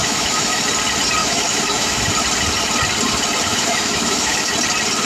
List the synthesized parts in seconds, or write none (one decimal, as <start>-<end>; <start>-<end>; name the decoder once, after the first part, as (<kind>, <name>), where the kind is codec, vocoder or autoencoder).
0.0-0.6 (autoencoder, DAC-VAE); 1.2-2.1; 3.5-4.5